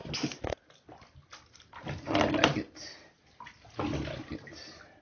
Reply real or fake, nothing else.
real